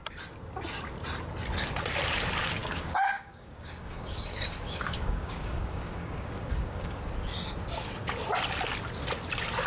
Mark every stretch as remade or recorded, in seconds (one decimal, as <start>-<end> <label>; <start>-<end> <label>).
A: 0.0-2.6 recorded; 2.6-7.0 remade; 7.0-9.7 recorded